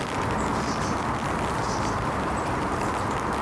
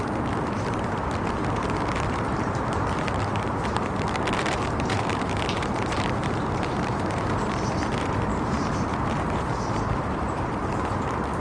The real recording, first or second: first